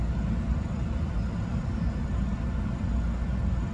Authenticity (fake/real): real